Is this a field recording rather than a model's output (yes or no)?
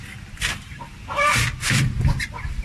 yes